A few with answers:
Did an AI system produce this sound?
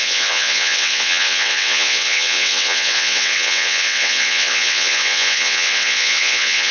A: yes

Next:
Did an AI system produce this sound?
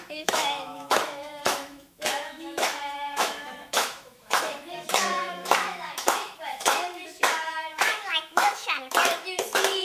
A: yes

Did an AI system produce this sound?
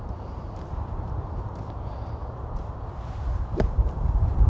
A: yes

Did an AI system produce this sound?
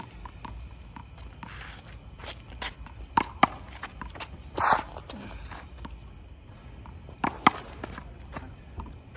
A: no